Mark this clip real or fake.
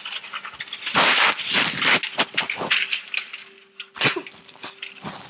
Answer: real